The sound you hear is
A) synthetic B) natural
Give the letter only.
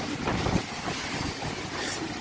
B